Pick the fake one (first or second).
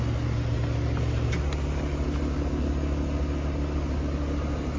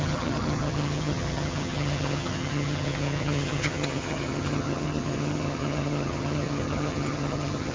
second